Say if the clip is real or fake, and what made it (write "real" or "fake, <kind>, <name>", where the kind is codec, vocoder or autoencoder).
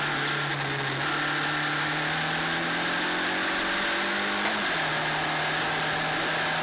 real